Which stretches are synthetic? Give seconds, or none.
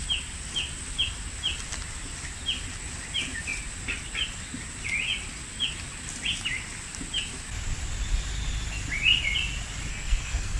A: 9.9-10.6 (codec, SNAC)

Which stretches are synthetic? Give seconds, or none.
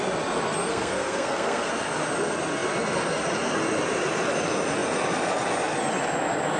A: 0.7-1.7 (codec, SNAC)